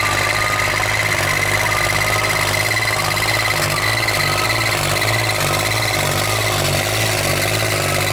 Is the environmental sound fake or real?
real